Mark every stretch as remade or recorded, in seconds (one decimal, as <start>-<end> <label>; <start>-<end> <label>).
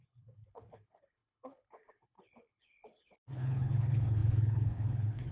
0.0-5.3 remade